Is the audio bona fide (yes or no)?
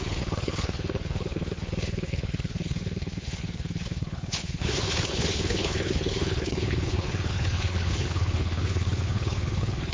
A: no